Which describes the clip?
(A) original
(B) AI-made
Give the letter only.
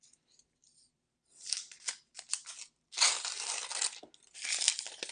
A